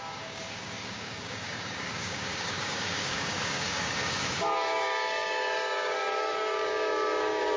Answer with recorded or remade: remade